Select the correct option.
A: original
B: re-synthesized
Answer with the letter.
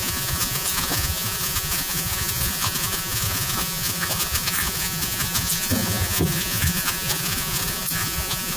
B